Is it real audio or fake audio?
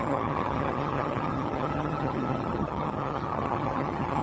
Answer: fake